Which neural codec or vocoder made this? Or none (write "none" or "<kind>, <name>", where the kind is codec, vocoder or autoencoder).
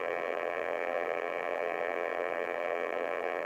vocoder, BigVGAN v2